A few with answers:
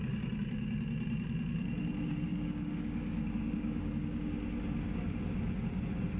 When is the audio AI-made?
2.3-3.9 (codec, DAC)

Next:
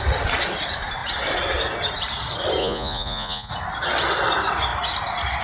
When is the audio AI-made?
2.6-3.5 (vocoder, Vocos)

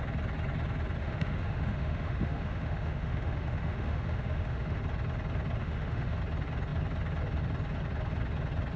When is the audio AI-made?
1.0-4.8 (autoencoder, DAC-VAE); 5.6-6.2

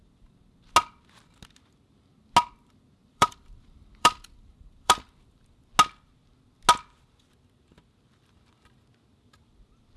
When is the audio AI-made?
3.0-5.7 (vocoder, BigVGAN v2)

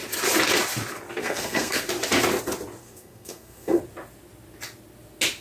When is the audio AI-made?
1.2-1.8 (codec, SNAC); 2.8-3.8